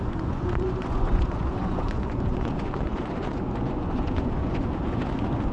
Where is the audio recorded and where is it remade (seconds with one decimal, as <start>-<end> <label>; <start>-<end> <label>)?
0.0-5.5 remade

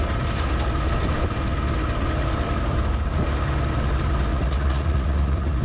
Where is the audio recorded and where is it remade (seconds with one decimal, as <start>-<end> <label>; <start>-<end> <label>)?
0.0-4.3 recorded; 4.3-5.6 remade

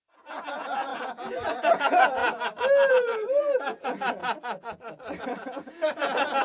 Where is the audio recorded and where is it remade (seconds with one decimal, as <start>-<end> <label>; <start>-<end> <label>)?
0.0-2.2 remade; 2.2-2.9 recorded; 2.9-4.2 remade; 4.2-5.2 recorded; 5.2-6.4 remade

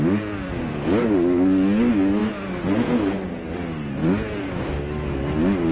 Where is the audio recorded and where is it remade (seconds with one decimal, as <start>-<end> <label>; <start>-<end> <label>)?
0.0-5.7 recorded

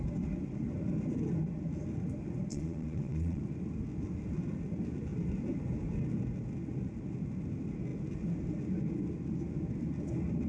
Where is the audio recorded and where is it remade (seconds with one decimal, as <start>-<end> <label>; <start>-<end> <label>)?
0.0-2.5 recorded; 2.5-3.4 remade; 3.4-10.5 recorded

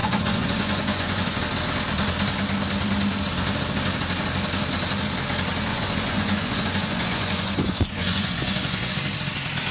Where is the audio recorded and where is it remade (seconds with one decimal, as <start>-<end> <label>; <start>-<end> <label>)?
0.0-1.4 remade; 1.4-5.7 recorded; 5.7-8.9 remade; 8.9-9.7 recorded

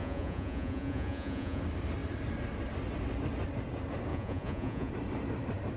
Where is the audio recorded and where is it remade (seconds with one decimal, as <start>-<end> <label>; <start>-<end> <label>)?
0.0-1.6 remade; 1.6-4.1 recorded; 4.1-4.9 remade; 4.9-5.8 recorded

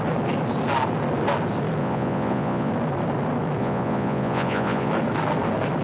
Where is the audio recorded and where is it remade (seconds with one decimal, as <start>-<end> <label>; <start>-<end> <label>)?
0.0-1.8 recorded; 1.8-2.7 remade; 2.7-3.6 recorded; 3.6-4.9 remade; 4.9-5.8 recorded